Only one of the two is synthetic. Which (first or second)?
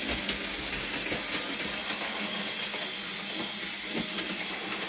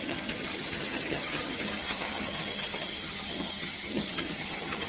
second